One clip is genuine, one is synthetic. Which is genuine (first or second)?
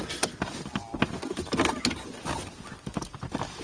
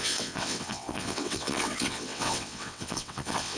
first